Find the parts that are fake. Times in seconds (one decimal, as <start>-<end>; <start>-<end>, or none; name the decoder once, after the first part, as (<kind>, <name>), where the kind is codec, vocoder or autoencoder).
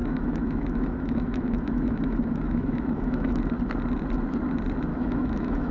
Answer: 0.0-3.4 (autoencoder, DAC-VAE); 4.9-5.7